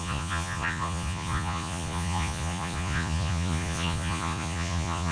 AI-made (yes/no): yes